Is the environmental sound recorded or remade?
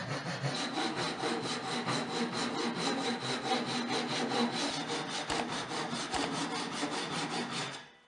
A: recorded